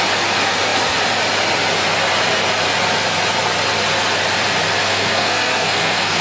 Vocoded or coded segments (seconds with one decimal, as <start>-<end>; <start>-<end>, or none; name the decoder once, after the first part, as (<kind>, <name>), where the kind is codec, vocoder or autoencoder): 4.8-6.2 (codec, SNAC)